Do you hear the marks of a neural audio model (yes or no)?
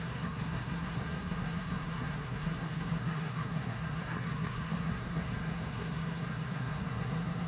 yes